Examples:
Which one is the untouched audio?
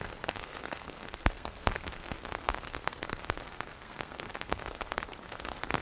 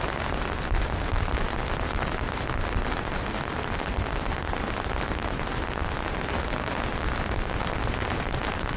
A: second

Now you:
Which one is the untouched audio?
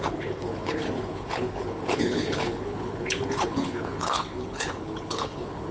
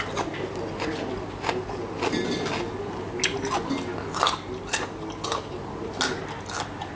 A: second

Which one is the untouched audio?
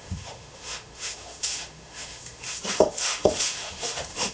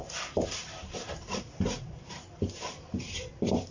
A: second